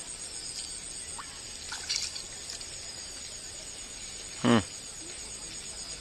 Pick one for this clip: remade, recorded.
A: recorded